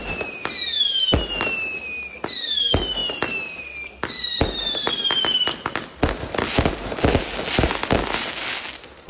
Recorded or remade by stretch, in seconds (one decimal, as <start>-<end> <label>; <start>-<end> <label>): 0.0-9.1 recorded

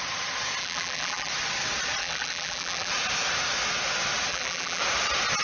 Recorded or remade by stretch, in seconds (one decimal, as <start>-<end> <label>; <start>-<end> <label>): 0.0-0.6 recorded; 0.6-1.3 remade; 1.3-2.0 recorded; 2.0-2.9 remade; 2.9-4.3 recorded; 4.3-4.8 remade; 4.8-5.4 recorded

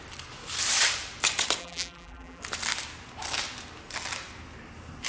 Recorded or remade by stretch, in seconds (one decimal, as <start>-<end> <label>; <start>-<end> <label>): 0.0-1.6 recorded; 1.6-2.4 remade; 2.4-5.1 recorded

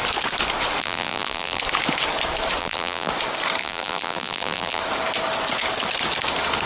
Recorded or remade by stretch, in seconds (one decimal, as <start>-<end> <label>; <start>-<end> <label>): 0.0-0.8 recorded; 0.8-1.6 remade; 1.6-2.6 recorded; 2.6-3.1 remade; 3.1-3.6 recorded; 3.6-4.8 remade; 4.8-6.7 recorded

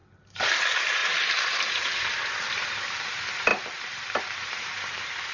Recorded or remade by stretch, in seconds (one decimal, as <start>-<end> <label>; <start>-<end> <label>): 0.0-0.5 recorded; 0.5-5.3 remade

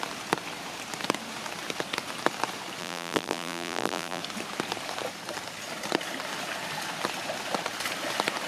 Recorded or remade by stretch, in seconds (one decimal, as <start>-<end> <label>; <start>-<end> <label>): 0.0-2.8 recorded; 2.8-4.2 remade; 4.2-8.5 recorded